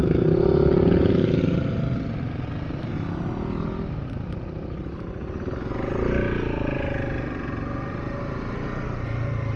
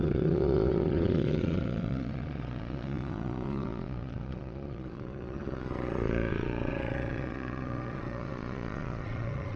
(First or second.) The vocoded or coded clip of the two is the second